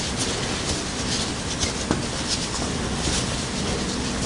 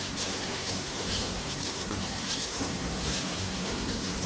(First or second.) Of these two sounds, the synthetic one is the second